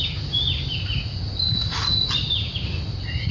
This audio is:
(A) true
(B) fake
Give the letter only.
A